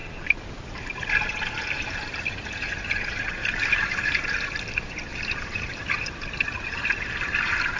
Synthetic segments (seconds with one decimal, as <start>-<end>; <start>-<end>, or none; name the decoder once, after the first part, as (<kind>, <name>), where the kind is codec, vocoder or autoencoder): 0.0-0.9 (vocoder, BigVGAN v2); 3.4-4.3; 5.1-7.8